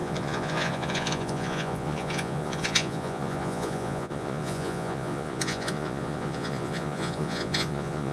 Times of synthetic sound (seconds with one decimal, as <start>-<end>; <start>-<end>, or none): 0.0-8.1